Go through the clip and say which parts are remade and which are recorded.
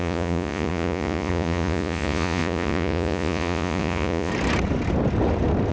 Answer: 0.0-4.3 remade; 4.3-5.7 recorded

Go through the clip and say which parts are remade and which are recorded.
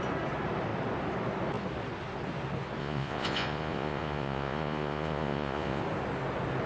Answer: 0.0-2.8 recorded; 2.8-5.8 remade; 5.8-6.7 recorded